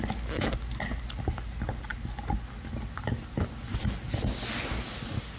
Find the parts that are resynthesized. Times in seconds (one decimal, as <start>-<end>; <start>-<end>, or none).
none